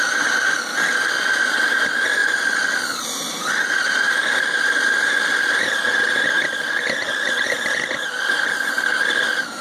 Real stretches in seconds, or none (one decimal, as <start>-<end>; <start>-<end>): 0.0-9.6